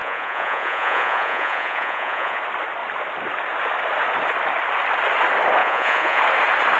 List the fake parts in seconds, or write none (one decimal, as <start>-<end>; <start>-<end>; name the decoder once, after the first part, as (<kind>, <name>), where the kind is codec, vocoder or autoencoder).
0.0-2.4 (vocoder, Vocos); 5.6-6.2